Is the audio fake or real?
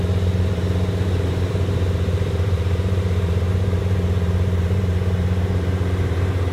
fake